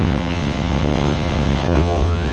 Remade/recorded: remade